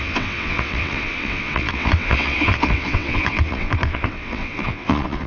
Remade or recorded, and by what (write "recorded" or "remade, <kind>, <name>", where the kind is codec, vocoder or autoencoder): remade, vocoder, WaveNeXt